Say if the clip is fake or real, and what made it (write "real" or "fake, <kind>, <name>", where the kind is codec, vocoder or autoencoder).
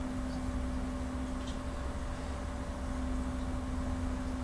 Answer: real